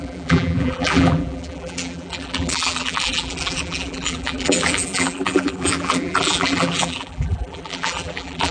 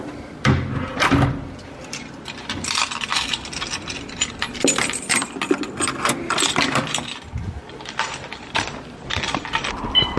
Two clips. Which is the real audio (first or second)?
second